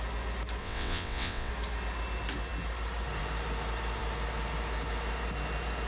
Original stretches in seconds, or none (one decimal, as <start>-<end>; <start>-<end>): 0.0-0.6; 1.5-5.9